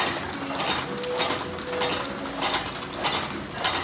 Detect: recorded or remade recorded